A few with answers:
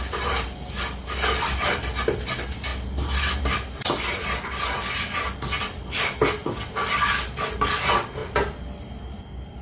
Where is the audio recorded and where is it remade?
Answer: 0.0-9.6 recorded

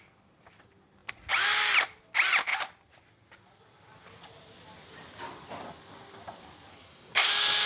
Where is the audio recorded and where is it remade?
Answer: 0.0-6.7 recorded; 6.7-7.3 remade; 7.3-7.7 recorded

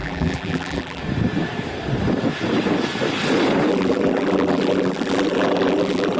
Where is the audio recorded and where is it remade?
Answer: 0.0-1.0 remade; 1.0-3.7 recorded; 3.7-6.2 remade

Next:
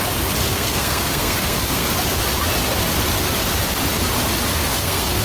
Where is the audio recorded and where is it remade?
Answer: 0.0-0.5 recorded; 0.5-1.9 remade; 1.9-4.5 recorded; 4.5-5.2 remade

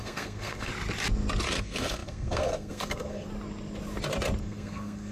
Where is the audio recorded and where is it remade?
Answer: 0.0-0.7 remade; 0.7-1.6 recorded; 1.6-3.3 remade; 3.3-4.4 recorded; 4.4-5.1 remade

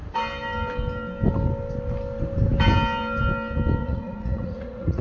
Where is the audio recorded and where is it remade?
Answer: 0.0-3.8 recorded; 3.8-5.0 remade